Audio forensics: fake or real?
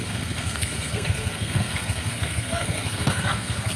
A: fake